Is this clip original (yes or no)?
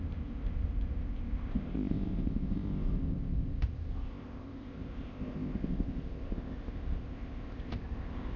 no